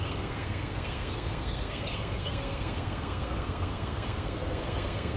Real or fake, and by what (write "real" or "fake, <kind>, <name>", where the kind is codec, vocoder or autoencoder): fake, codec, SNAC